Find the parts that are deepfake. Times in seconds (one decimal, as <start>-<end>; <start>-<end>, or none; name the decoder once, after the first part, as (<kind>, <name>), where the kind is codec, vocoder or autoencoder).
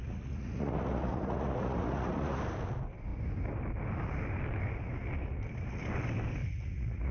0.0-2.4 (vocoder, Vocos); 6.4-7.1